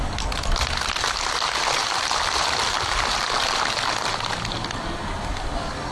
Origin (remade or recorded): recorded